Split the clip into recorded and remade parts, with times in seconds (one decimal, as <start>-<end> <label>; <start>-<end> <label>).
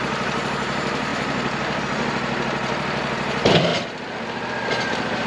0.0-3.7 remade; 3.7-4.7 recorded; 4.7-5.3 remade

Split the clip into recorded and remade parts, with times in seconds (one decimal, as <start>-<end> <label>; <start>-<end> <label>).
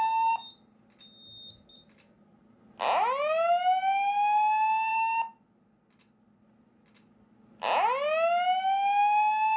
0.0-9.6 recorded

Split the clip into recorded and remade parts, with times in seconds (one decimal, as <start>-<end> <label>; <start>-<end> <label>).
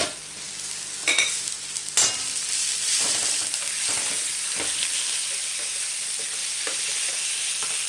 0.0-2.6 recorded; 2.6-5.8 remade; 5.8-6.4 recorded; 6.4-7.1 remade; 7.1-7.9 recorded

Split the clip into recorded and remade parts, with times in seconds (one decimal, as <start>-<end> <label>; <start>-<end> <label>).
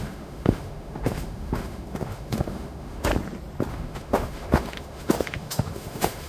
0.0-3.1 remade; 3.1-3.7 recorded; 3.7-6.3 remade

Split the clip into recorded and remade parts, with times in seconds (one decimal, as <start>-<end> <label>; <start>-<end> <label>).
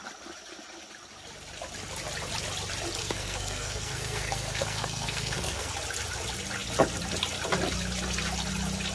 0.0-3.0 recorded; 3.0-5.7 remade; 5.7-8.9 recorded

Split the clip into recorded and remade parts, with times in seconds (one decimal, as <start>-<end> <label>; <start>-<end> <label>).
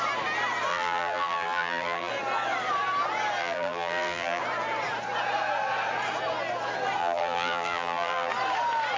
0.0-0.7 recorded; 0.7-2.1 remade; 2.1-3.4 recorded; 3.4-4.4 remade; 4.4-7.0 recorded; 7.0-8.3 remade; 8.3-9.0 recorded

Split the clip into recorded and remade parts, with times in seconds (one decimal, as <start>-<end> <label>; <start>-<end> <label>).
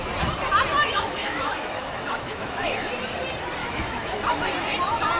0.0-0.8 recorded; 0.8-2.9 remade; 2.9-3.6 recorded; 3.6-4.2 remade; 4.2-5.2 recorded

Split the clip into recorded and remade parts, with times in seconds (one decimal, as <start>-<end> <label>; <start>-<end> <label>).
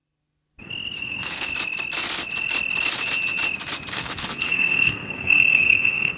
0.0-1.0 recorded; 1.0-1.5 remade; 1.5-3.9 recorded; 3.9-6.2 remade